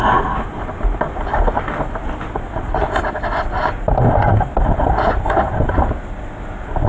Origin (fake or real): real